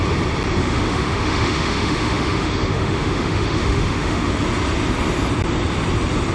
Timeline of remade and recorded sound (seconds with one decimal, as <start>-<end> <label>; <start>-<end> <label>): 0.0-0.6 recorded; 0.6-4.3 remade; 4.3-6.3 recorded